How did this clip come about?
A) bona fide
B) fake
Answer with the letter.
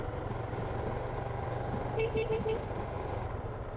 A